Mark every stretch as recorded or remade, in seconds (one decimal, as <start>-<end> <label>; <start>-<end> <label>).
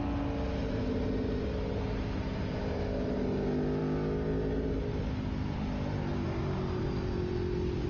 0.0-7.9 recorded